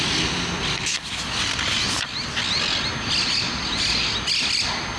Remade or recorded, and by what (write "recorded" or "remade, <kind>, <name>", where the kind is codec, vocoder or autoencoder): recorded